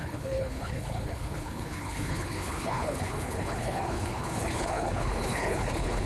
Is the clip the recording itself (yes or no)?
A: no